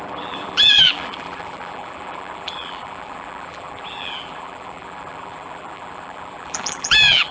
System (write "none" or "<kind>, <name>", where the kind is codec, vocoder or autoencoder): vocoder, BigVGAN v2